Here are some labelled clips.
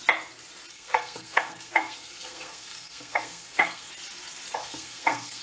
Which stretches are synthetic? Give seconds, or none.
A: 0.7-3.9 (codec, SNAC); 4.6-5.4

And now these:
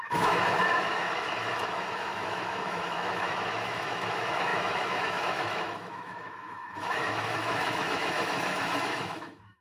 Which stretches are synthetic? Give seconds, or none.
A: 0.0-9.6 (autoencoder, DAC-VAE)

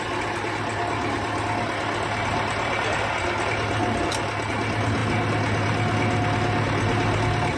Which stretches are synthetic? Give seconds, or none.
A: none